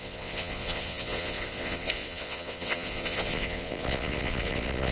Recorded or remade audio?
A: remade